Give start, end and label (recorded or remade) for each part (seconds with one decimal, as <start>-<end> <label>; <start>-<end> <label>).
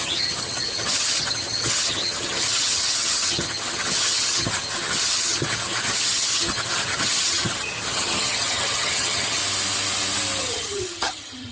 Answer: 0.0-9.4 remade; 9.4-10.4 recorded; 10.4-11.5 remade